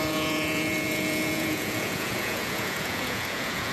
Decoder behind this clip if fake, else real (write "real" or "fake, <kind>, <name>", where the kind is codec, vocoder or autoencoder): fake, vocoder, Vocos